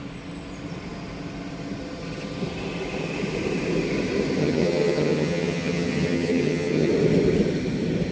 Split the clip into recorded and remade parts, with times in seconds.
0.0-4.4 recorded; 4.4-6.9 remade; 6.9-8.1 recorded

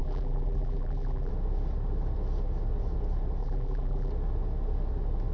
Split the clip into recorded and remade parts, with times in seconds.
0.0-1.3 remade; 1.3-3.4 recorded; 3.4-4.1 remade; 4.1-5.3 recorded

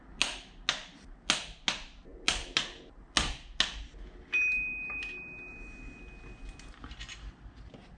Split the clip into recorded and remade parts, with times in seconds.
0.0-8.0 recorded